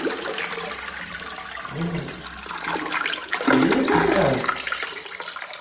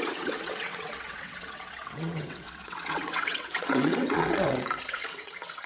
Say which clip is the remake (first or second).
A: second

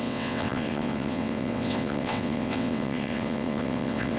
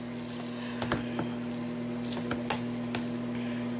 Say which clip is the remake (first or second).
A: first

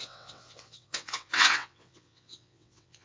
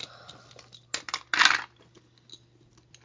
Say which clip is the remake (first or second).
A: first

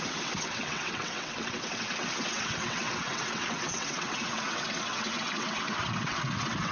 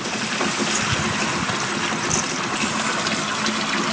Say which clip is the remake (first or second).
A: first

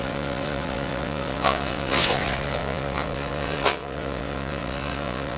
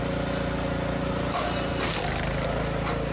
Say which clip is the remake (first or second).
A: first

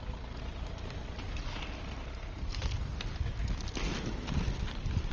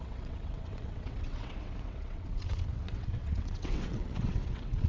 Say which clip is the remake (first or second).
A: second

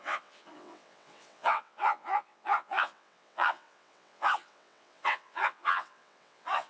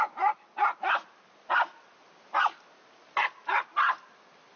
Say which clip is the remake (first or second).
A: first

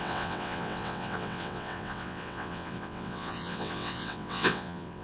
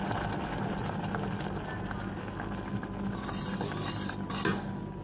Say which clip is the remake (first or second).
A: first